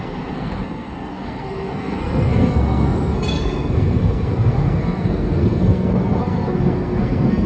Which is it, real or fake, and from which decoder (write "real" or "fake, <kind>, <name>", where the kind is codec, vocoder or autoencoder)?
fake, codec, SNAC